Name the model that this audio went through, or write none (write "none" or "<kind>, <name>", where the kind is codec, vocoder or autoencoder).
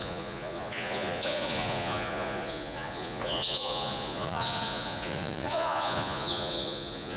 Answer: vocoder, Vocos